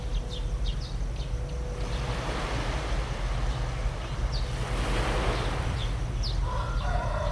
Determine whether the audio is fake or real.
real